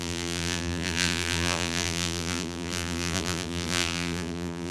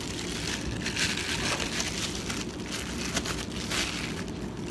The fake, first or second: first